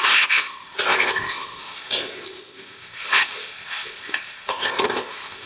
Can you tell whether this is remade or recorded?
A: remade